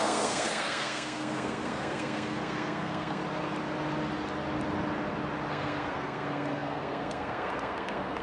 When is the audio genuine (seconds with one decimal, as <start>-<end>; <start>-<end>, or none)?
3.2-5.5